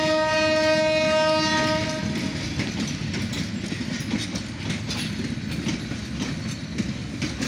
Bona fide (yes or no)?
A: yes